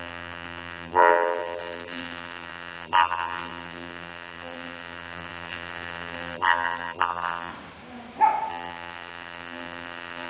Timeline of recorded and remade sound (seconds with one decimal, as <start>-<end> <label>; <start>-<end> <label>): 0.0-7.5 remade; 7.5-8.5 recorded; 8.5-10.3 remade